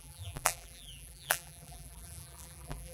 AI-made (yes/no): yes